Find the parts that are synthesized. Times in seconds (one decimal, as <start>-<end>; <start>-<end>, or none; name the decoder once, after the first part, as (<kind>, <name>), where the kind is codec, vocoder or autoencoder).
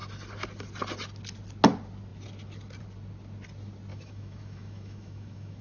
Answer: 3.9-5.6 (autoencoder, DAC-VAE)